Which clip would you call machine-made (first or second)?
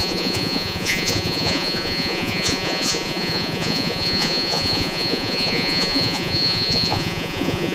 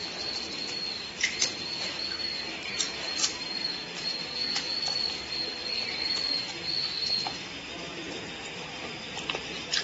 first